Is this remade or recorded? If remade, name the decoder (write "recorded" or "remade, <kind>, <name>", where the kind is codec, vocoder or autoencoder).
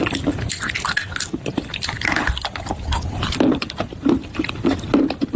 recorded